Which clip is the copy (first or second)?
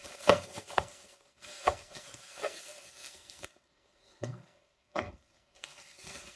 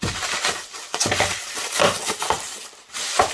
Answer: first